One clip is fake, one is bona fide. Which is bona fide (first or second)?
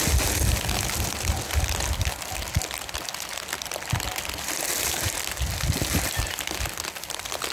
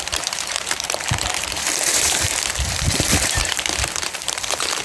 first